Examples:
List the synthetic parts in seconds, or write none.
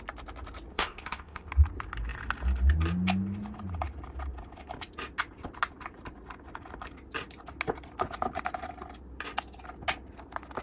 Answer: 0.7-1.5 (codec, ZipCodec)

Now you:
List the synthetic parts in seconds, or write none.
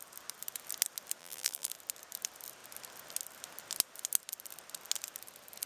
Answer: 1.2-1.7 (vocoder, BigVGAN v2)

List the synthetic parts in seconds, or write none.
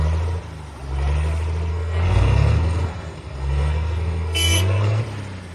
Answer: 1.7-5.0 (codec, SNAC)